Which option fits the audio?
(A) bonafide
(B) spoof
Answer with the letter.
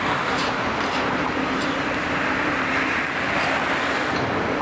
A